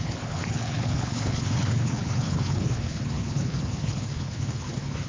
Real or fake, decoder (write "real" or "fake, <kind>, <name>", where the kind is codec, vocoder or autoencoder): fake, codec, HILCodec